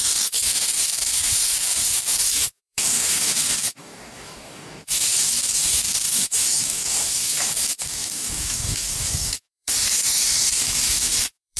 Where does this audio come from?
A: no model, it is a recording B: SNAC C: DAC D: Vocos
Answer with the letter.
C